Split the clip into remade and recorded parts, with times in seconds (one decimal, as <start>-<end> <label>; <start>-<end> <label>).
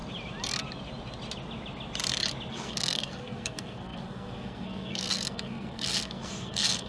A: 0.0-2.5 recorded; 2.5-6.9 remade